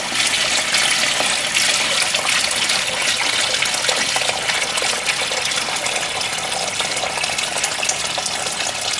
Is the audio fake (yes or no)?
no